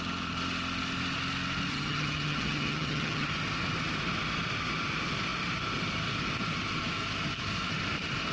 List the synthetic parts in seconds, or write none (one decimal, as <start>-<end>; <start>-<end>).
1.7-3.3